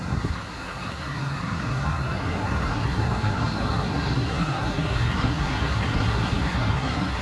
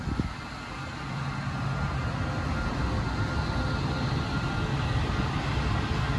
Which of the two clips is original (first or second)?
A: second